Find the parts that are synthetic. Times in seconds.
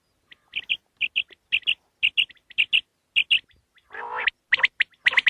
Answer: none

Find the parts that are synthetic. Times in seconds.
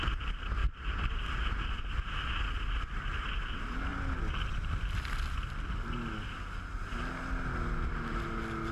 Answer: 0.6-1.7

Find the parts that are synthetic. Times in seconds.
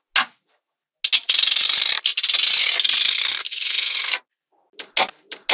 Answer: 3.1-4.1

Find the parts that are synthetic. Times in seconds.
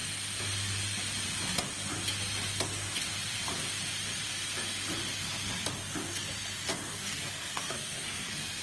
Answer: 6.7-8.6